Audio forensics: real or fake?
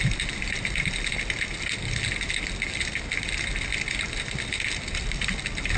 real